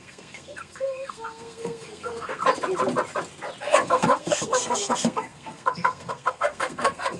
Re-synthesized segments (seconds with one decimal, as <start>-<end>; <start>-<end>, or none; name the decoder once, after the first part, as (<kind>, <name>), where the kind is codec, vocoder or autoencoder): 0.0-2.4 (codec, SNAC); 3.6-7.2